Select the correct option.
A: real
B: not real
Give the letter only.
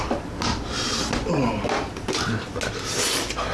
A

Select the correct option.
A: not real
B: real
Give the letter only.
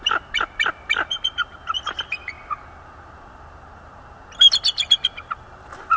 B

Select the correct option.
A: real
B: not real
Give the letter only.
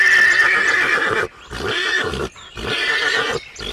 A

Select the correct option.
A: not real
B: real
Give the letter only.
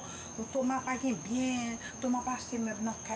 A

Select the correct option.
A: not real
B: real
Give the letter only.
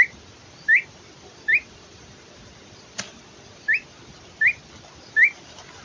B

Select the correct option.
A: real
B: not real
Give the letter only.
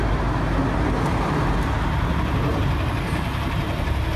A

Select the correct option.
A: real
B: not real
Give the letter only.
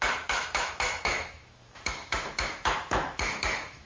B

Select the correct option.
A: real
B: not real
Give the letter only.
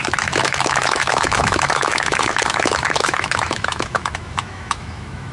B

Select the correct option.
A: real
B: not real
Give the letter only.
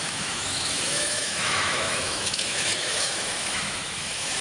B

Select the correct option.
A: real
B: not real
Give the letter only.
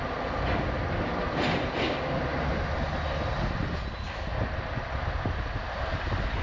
A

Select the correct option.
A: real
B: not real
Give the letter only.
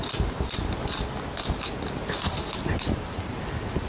A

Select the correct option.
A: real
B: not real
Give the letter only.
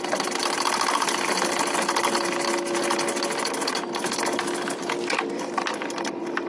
A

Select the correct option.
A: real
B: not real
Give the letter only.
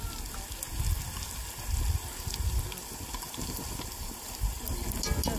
A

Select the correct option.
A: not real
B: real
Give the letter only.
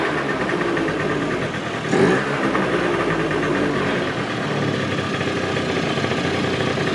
B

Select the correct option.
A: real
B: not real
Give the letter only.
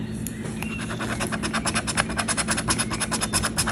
A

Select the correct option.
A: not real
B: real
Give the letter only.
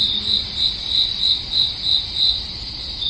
B